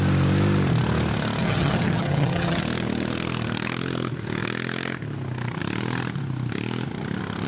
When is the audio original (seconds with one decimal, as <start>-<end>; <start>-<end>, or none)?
0.0-1.4; 2.6-7.5